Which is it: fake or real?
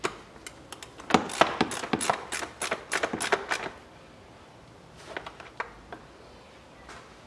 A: real